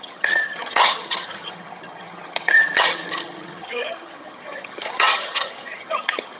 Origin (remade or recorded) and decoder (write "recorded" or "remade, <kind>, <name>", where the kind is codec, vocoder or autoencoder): remade, vocoder, HiFi-GAN